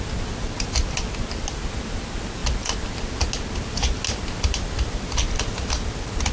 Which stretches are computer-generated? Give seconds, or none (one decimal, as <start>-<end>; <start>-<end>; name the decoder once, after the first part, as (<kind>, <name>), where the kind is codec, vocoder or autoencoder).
none